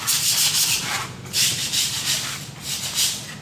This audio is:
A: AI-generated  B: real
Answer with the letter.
B